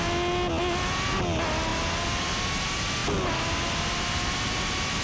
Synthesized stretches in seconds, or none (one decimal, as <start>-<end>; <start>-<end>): none